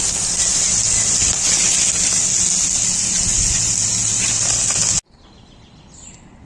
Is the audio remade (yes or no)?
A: no